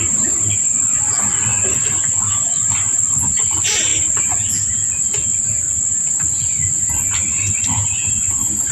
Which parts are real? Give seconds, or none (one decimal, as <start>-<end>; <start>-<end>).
3.9-7.6